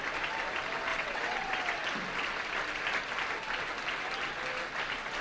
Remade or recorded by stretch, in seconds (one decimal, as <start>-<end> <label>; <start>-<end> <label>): 0.0-0.9 recorded; 0.9-1.5 remade; 1.5-5.2 recorded